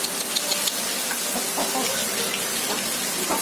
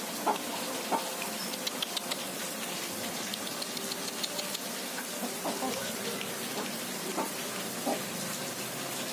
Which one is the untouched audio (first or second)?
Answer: first